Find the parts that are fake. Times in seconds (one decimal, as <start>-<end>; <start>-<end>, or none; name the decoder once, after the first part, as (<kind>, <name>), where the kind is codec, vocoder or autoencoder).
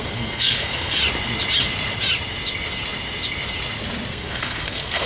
0.0-1.0 (codec, SNAC); 4.1-5.1